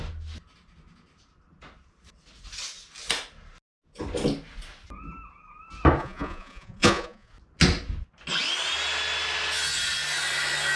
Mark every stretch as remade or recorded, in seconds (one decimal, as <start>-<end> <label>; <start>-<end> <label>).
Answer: 0.0-6.0 recorded; 6.0-7.3 remade; 7.3-10.8 recorded